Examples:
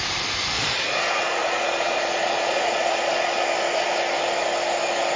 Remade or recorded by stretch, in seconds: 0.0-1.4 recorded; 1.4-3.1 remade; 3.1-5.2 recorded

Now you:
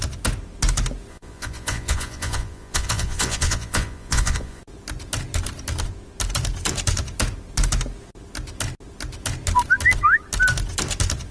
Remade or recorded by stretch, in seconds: 0.0-1.1 recorded; 1.1-4.6 remade; 4.6-11.3 recorded

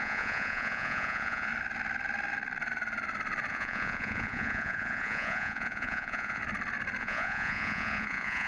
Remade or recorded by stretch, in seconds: 0.0-1.5 remade; 1.5-3.5 recorded; 3.5-6.4 remade; 6.4-7.0 recorded; 7.0-8.5 remade

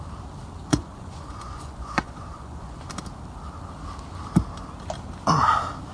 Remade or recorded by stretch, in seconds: 0.0-0.7 recorded; 0.7-2.9 remade; 2.9-5.9 recorded